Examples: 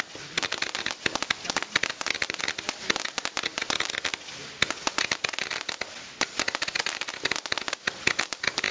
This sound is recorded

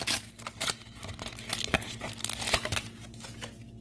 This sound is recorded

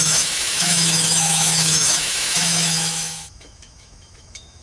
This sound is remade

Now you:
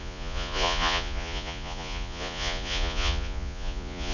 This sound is remade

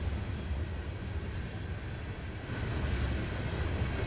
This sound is recorded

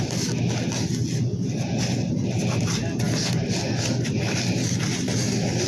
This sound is recorded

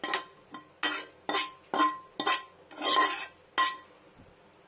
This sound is recorded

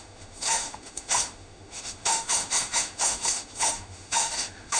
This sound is remade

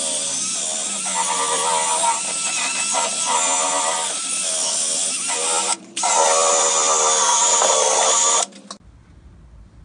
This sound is recorded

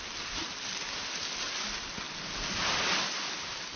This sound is recorded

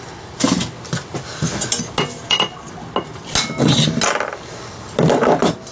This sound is recorded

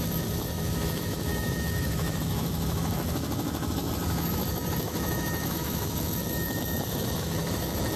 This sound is remade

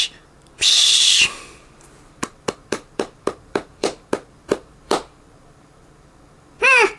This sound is remade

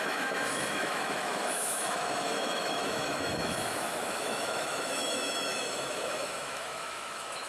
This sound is remade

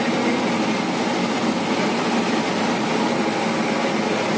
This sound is recorded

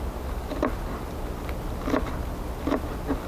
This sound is recorded